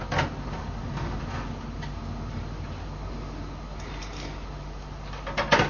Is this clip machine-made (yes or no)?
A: no